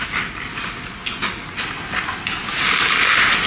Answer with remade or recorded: recorded